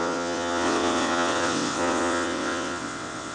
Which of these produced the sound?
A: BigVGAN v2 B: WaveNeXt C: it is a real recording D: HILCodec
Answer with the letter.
B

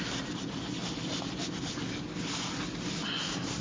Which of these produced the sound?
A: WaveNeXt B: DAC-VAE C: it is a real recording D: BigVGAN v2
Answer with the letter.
C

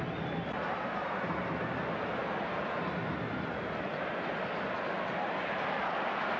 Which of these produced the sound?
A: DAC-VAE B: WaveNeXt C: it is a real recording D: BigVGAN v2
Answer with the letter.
C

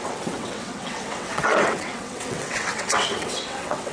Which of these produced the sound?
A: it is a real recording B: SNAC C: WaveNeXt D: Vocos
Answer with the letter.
C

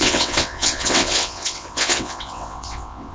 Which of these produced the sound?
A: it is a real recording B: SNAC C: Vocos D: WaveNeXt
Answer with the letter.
D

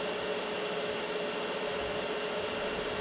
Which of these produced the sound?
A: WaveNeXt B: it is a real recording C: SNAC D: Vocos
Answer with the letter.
B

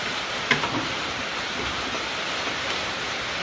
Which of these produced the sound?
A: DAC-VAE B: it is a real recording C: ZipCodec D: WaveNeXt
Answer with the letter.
B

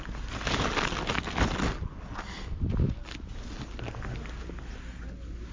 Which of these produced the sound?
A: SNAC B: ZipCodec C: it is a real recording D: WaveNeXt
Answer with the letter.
C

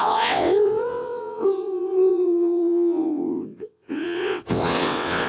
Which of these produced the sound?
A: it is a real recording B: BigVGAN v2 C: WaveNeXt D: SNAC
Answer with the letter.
C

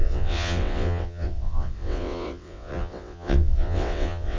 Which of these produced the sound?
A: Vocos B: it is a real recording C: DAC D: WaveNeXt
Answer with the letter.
D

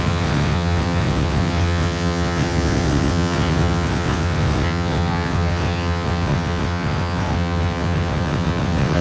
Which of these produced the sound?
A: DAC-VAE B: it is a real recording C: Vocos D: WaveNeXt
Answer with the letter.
D